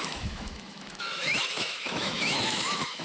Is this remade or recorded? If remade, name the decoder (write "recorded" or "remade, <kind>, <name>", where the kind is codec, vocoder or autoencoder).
remade, autoencoder, DAC-VAE